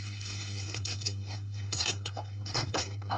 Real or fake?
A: fake